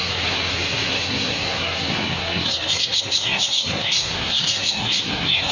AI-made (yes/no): yes